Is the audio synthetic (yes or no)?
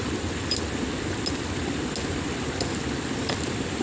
no